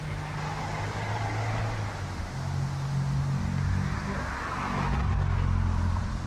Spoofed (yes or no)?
no